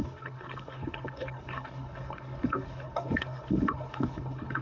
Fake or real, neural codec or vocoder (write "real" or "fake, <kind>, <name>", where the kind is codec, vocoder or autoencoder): fake, codec, HILCodec